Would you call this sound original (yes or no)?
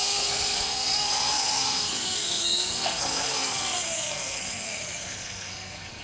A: no